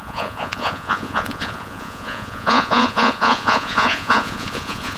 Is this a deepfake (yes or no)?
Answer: yes